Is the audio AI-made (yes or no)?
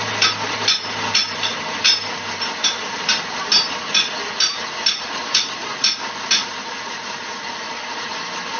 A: no